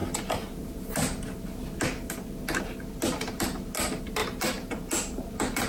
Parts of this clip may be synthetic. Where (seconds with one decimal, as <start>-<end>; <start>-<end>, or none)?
none